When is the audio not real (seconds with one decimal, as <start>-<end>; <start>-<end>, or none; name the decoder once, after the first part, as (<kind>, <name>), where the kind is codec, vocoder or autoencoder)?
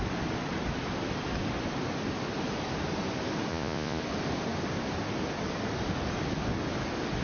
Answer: 3.5-4.0 (vocoder, Vocos)